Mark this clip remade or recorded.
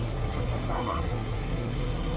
remade